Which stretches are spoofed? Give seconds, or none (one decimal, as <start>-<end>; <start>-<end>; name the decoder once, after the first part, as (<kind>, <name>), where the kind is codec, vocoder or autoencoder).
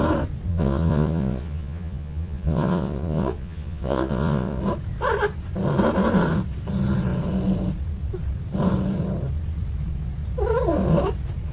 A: 0.5-4.6 (vocoder, Vocos)